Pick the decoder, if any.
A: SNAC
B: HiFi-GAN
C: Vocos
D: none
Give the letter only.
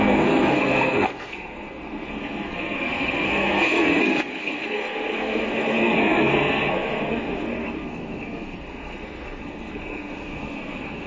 A